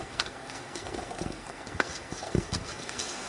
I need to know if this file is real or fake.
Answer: fake